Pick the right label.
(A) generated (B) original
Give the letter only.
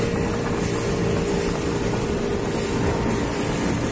B